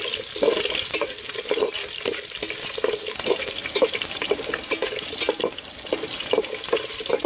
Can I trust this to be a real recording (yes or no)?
yes